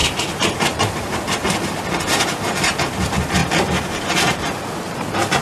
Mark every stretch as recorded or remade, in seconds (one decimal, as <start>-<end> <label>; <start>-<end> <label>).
0.0-1.2 remade; 1.2-3.4 recorded; 3.4-5.4 remade